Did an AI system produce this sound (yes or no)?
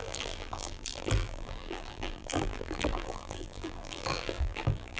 yes